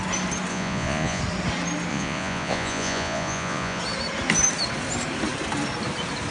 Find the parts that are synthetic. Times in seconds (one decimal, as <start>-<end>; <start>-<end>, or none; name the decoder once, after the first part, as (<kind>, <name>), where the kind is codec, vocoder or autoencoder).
0.5-1.2 (vocoder, Vocos); 1.9-3.8